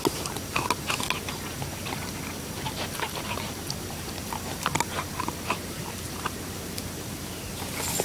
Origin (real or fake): real